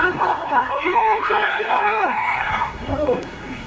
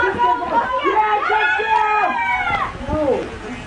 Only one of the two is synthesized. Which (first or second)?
first